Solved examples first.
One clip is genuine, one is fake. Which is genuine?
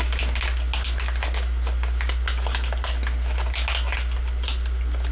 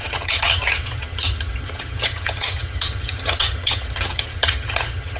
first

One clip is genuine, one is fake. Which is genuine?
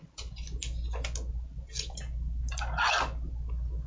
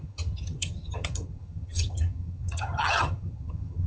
first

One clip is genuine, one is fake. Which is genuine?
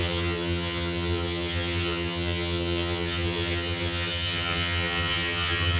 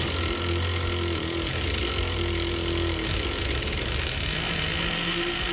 second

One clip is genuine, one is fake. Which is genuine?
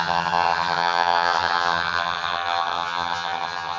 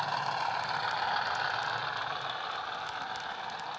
second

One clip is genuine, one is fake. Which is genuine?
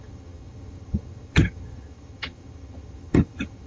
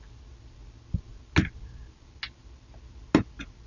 second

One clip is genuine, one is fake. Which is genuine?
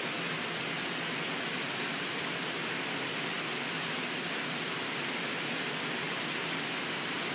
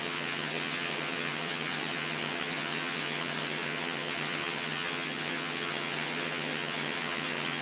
first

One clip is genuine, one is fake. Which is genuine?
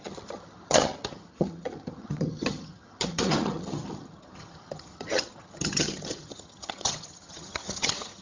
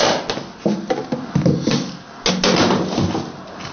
second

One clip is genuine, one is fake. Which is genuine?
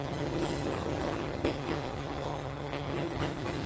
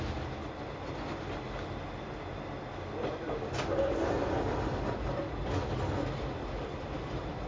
second